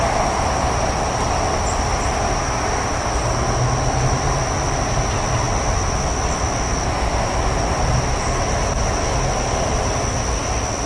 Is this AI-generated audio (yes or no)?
no